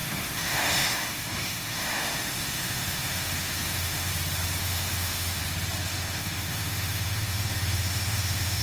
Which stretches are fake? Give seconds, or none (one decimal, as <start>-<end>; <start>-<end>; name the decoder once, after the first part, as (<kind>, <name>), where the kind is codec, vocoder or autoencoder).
0.0-4.1 (autoencoder, DAC-VAE); 4.6-5.4; 5.9-8.6